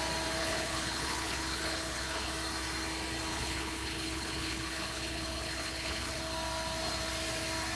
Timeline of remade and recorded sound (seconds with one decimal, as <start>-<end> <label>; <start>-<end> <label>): 0.0-0.4 recorded; 0.4-2.3 remade; 2.3-3.3 recorded; 3.3-6.2 remade; 6.2-7.7 recorded